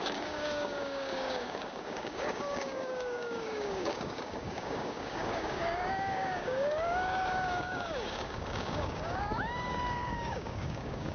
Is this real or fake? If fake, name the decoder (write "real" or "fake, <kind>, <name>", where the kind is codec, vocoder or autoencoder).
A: fake, codec, DAC